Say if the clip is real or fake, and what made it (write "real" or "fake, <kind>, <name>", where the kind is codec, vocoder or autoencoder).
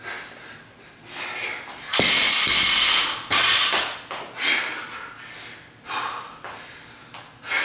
real